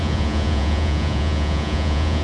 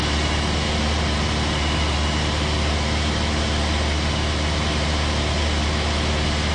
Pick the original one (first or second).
second